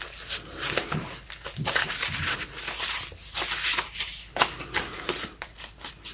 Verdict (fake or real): real